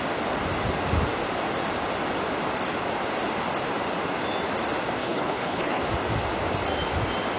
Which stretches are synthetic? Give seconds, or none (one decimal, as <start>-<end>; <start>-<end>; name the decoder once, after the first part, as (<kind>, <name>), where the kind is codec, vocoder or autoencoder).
5.0-5.8 (codec, HILCodec)